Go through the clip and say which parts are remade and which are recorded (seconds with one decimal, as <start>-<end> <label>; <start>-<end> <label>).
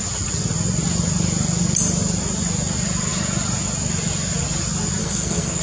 0.0-5.0 recorded; 5.0-5.6 remade